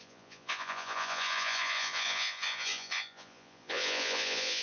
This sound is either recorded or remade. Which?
remade